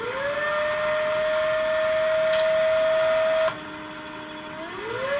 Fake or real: real